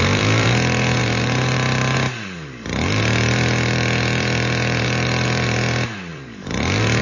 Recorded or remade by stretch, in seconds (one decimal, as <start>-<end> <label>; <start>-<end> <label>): 0.0-7.0 remade